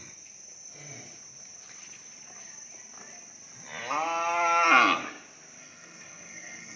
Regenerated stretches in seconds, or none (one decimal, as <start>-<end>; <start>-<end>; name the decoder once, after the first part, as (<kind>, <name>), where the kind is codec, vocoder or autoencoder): 5.6-6.8 (codec, SNAC)